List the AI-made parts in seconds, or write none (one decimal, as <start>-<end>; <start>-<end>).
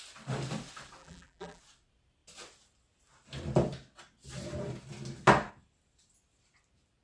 1.0-1.6